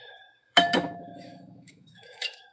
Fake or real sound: fake